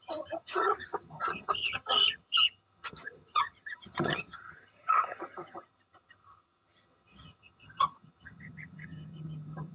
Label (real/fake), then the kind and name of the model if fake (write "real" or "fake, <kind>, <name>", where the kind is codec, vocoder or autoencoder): fake, vocoder, HiFi-GAN